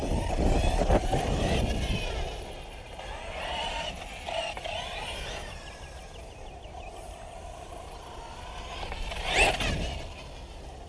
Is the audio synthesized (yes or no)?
no